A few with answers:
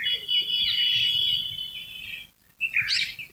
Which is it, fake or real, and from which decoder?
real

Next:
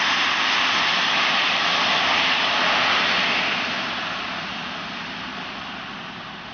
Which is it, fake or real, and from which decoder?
real